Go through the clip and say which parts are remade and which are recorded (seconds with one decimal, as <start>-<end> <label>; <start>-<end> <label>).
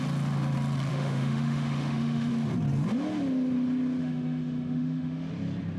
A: 0.0-0.9 recorded; 0.9-2.3 remade; 2.3-4.0 recorded; 4.0-5.3 remade; 5.3-5.8 recorded